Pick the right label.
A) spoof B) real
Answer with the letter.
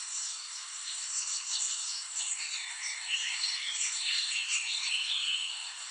A